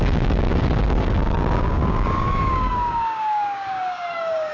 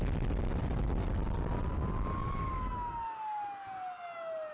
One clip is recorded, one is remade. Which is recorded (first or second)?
second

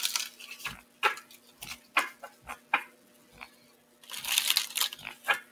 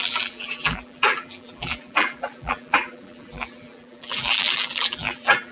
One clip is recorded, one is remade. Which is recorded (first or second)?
first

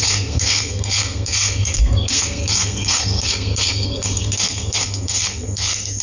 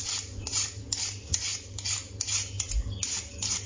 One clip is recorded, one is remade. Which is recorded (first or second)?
second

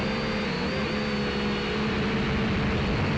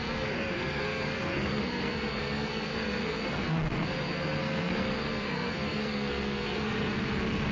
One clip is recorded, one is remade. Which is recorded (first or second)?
first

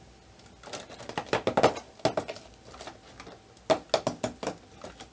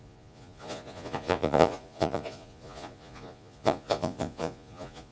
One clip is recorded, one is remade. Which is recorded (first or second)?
first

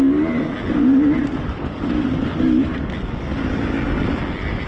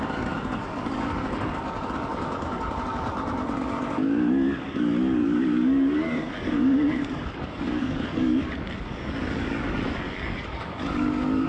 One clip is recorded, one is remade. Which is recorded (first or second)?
first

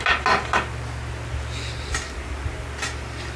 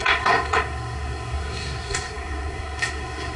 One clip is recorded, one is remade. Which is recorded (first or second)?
first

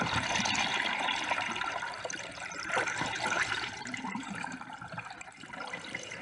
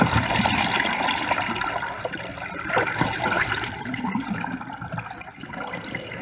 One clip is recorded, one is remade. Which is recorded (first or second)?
second